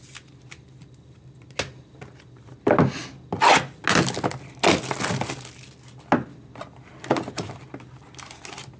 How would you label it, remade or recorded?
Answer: recorded